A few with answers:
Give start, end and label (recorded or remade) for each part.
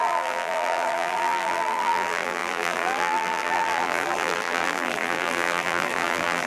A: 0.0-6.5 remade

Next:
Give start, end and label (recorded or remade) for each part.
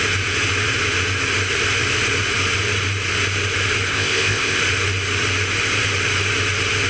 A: 0.0-3.9 recorded; 3.9-4.6 remade; 4.6-6.9 recorded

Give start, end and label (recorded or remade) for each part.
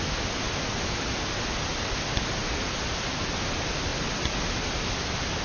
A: 0.0-5.4 recorded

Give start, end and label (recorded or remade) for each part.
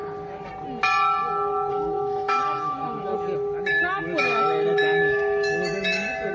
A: 0.0-1.7 recorded; 1.7-3.1 remade; 3.1-3.7 recorded; 3.7-6.3 remade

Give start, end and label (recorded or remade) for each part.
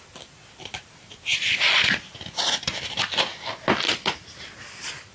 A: 0.0-5.1 recorded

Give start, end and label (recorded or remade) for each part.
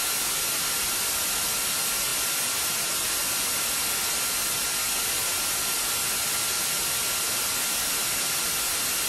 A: 0.0-9.1 recorded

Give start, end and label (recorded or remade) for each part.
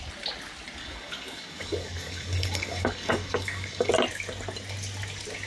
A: 0.0-0.8 recorded; 0.8-3.9 remade; 3.9-5.5 recorded